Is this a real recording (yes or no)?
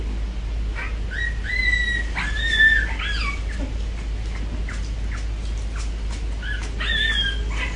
yes